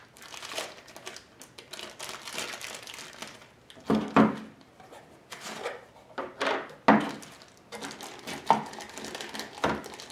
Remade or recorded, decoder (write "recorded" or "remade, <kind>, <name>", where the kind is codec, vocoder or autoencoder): recorded